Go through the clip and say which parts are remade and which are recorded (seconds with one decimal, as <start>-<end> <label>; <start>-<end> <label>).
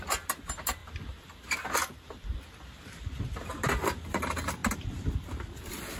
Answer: 0.0-6.0 recorded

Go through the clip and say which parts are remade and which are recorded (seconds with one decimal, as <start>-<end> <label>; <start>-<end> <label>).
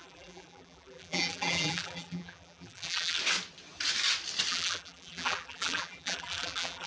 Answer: 0.0-3.2 remade; 3.2-4.5 recorded; 4.5-6.9 remade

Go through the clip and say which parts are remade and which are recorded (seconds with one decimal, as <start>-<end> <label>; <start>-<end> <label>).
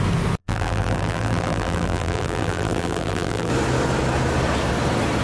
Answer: 0.0-0.4 recorded; 0.4-3.5 remade; 3.5-5.2 recorded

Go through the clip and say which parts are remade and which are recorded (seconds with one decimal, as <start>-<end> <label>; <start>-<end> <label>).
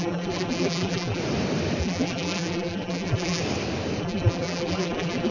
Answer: 0.0-1.2 remade; 1.2-1.8 recorded; 1.8-3.4 remade; 3.4-4.0 recorded; 4.0-5.3 remade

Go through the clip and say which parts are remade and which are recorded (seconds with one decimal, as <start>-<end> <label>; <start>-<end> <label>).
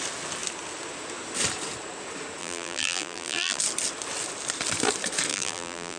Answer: 0.0-2.4 recorded; 2.4-3.6 remade; 3.6-5.3 recorded; 5.3-6.0 remade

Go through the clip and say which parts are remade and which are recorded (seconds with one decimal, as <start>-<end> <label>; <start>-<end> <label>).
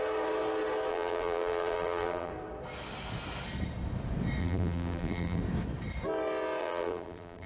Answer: 0.0-0.9 recorded; 0.9-2.3 remade; 2.3-4.4 recorded; 4.4-5.4 remade; 5.4-6.6 recorded; 6.6-7.5 remade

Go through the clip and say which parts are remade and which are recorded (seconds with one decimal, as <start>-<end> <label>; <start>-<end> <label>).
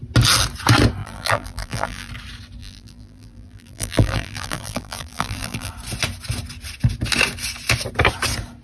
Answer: 0.0-1.0 recorded; 1.0-2.1 remade; 2.1-2.6 recorded; 2.6-5.7 remade; 5.7-8.6 recorded